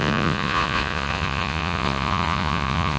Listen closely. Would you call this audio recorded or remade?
remade